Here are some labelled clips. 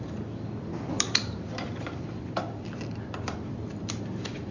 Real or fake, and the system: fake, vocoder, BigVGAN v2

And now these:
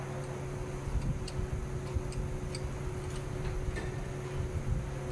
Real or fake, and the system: real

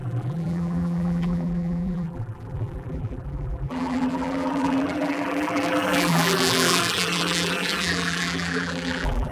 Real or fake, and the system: fake, vocoder, BigVGAN v2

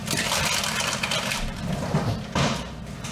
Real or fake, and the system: fake, vocoder, BigVGAN v2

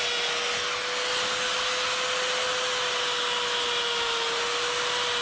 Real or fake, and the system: real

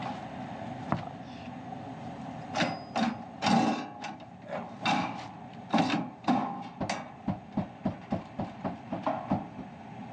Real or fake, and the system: real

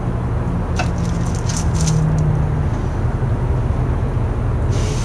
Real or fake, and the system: real